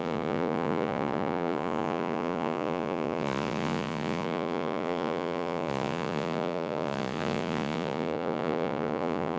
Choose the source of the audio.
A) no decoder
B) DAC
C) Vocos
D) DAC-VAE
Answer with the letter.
C